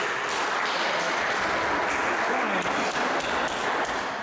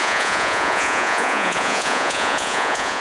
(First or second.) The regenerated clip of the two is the second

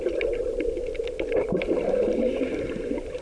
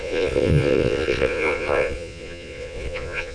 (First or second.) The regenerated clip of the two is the second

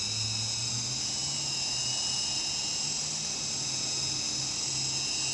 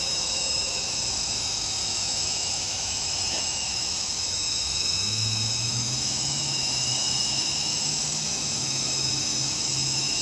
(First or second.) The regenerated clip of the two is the second